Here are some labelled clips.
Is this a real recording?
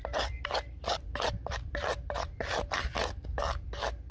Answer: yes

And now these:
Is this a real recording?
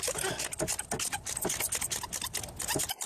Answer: yes